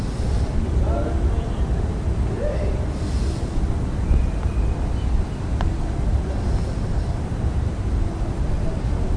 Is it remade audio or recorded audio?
recorded